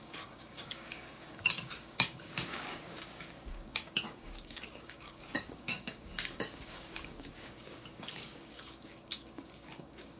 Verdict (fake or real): fake